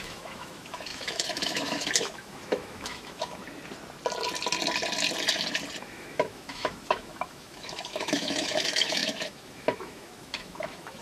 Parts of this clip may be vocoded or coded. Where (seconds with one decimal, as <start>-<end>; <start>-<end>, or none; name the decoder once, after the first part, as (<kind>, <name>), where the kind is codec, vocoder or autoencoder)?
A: 0.0-3.4 (autoencoder, DAC-VAE); 5.8-11.0